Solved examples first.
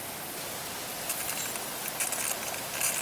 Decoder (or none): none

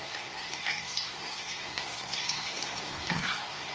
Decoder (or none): codec, SNAC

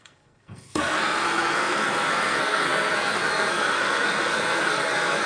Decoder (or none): codec, SNAC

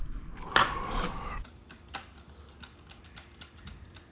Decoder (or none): none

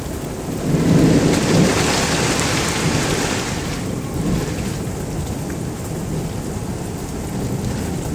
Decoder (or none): none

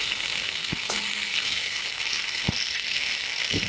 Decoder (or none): codec, SNAC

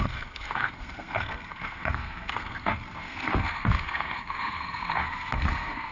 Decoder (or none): codec, SNAC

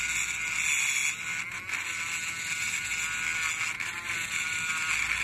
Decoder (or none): none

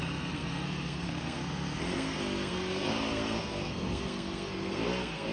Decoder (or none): codec, SNAC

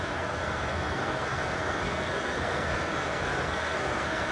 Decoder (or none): codec, SNAC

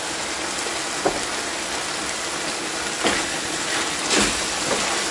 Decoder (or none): none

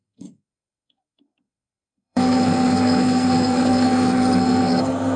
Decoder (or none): codec, SNAC